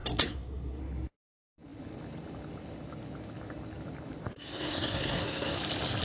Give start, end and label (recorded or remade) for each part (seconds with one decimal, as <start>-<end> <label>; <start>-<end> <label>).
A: 0.0-0.8 remade; 0.8-4.3 recorded; 4.3-5.6 remade; 5.6-6.0 recorded